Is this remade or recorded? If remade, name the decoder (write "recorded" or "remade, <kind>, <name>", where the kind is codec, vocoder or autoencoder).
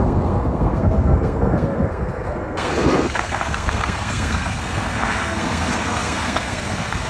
remade, codec, SNAC